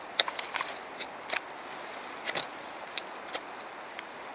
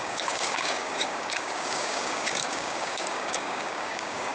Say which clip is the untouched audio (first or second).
first